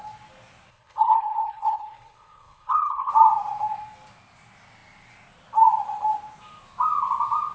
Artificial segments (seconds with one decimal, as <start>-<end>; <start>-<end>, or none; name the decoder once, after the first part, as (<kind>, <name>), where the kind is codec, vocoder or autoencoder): 0.7-3.1 (codec, HILCodec)